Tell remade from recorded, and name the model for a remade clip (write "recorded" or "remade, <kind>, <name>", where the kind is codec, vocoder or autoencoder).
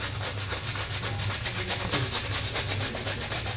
recorded